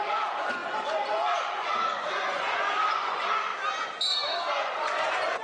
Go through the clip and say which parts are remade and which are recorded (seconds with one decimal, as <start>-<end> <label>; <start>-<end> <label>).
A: 0.0-3.5 remade; 3.5-4.5 recorded; 4.5-5.4 remade